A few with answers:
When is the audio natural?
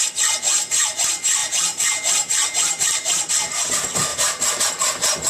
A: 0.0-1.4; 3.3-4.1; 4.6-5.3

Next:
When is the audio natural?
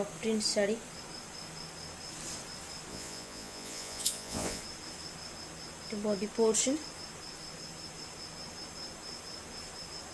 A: 0.0-2.9; 4.6-10.1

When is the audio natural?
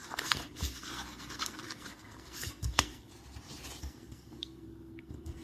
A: 3.1-3.8